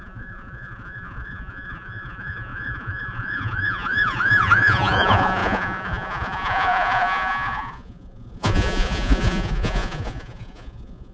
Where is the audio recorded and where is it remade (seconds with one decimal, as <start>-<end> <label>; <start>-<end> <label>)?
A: 0.0-11.1 remade